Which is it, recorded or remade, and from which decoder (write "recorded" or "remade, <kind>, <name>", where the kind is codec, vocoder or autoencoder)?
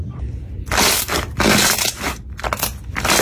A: recorded